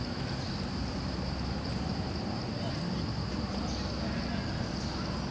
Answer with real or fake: real